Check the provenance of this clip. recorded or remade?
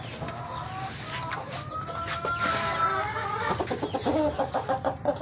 recorded